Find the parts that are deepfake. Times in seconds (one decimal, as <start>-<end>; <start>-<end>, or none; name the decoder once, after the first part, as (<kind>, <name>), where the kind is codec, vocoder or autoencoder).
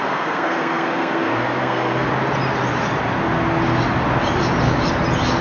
0.0-2.1 (codec, SNAC)